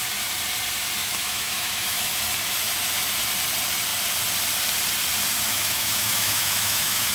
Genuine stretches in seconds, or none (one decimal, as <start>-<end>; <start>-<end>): 0.0-1.0; 2.1-5.5